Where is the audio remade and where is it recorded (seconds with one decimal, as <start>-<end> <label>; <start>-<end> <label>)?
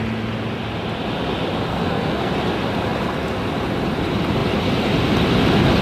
0.0-1.7 recorded; 1.7-2.3 remade; 2.3-5.8 recorded